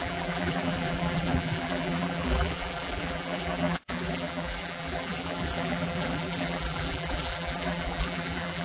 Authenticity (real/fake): fake